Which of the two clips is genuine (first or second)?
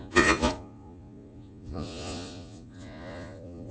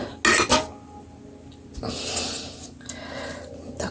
second